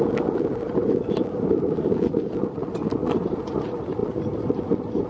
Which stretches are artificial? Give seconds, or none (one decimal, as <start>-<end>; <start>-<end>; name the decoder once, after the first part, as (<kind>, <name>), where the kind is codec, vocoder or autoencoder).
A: none